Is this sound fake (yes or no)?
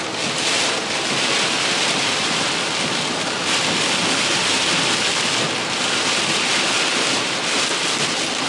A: no